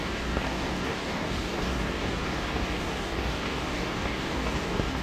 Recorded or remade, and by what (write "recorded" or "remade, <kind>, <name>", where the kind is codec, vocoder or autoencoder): remade, codec, DAC